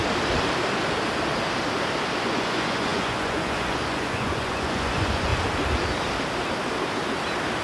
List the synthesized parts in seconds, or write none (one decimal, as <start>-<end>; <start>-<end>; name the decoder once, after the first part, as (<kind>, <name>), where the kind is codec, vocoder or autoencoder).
2.2-5.3 (vocoder, Vocos)